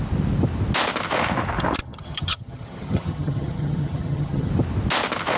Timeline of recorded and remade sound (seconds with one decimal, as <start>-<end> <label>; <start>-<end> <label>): 0.0-1.8 recorded; 1.8-4.5 remade; 4.5-5.4 recorded